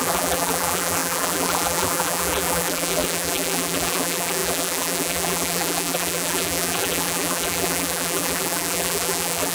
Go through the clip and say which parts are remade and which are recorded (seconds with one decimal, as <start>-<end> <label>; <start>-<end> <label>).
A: 0.0-9.5 remade